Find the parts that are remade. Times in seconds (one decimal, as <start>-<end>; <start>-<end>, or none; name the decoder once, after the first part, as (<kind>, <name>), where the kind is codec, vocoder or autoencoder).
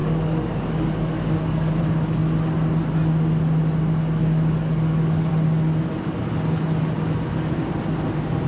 0.0-1.8 (codec, DAC); 4.2-5.3